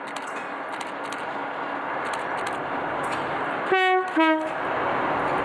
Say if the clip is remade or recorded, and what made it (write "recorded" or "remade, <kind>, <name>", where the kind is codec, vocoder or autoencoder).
recorded